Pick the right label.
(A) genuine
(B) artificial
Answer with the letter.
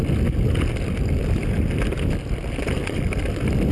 A